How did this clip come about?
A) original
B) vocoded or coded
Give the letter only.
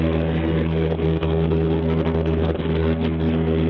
B